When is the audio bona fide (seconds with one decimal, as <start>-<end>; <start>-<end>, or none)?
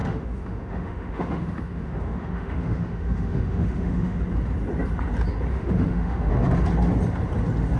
4.2-5.5; 6.3-7.8